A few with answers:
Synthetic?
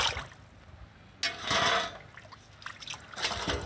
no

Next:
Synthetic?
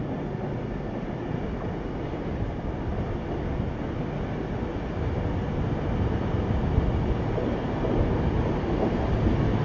no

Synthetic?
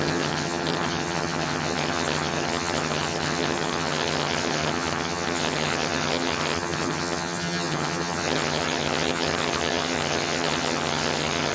yes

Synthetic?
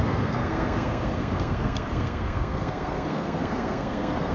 yes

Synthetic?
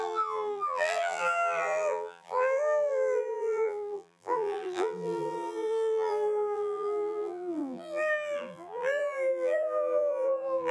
yes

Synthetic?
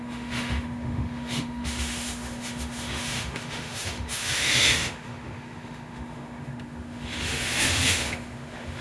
yes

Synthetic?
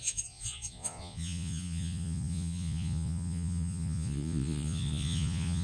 yes